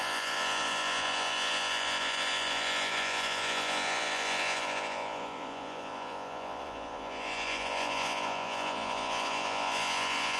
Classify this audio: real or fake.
fake